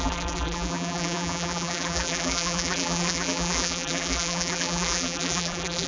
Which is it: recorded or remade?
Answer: remade